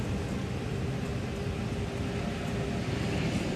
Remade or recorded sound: recorded